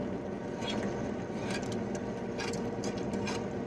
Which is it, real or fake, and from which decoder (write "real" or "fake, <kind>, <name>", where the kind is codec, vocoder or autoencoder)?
real